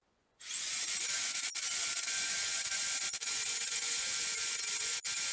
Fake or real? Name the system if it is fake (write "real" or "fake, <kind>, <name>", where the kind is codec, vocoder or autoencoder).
fake, vocoder, Vocos